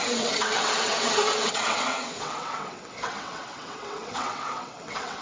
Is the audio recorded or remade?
remade